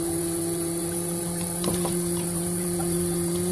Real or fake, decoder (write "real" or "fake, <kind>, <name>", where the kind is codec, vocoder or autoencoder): fake, vocoder, BigVGAN v2